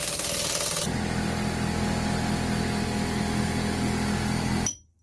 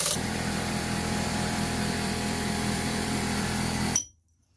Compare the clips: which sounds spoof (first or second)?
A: second